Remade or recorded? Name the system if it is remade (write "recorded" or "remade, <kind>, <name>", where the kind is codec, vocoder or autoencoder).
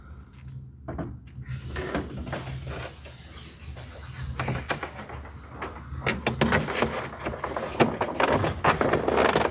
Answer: recorded